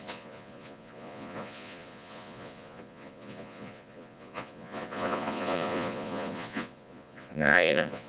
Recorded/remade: remade